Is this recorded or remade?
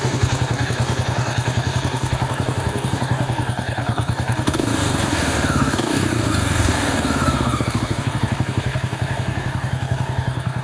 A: remade